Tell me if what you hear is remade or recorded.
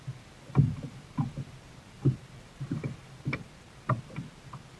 recorded